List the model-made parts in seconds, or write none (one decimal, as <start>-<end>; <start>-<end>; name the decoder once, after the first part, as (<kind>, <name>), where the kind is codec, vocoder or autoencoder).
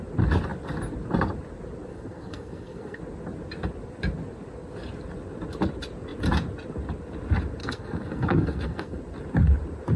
1.9-3.0 (codec, SNAC); 7.6-9.0